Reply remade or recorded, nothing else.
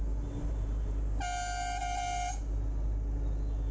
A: recorded